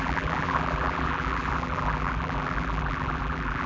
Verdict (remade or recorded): remade